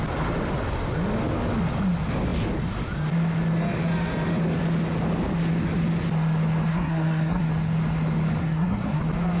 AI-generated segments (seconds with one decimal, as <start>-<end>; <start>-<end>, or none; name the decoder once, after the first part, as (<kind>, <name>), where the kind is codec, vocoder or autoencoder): 6.7-7.5 (codec, SNAC); 8.4-9.0